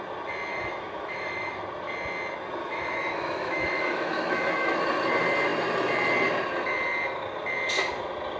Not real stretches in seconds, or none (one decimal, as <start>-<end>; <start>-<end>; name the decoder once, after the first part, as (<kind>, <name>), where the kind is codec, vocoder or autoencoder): 0.5-1.6 (autoencoder, DAC-VAE); 2.6-4.8